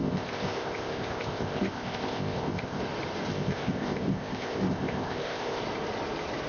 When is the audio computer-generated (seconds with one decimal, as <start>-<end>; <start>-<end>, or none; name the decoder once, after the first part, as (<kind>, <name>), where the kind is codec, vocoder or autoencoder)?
0.0-2.8 (codec, ZipCodec); 3.3-5.6